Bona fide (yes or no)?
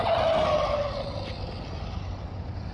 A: yes